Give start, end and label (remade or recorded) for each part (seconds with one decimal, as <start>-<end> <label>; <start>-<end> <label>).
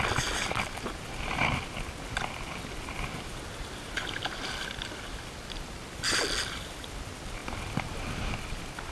0.0-8.9 recorded